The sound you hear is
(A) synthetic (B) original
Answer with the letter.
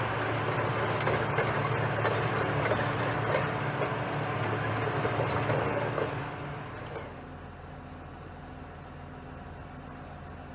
B